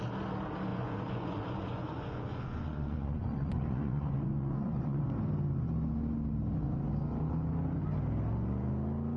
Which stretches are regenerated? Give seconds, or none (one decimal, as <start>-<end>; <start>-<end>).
0.7-5.0